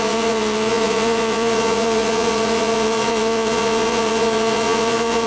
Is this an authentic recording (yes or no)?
no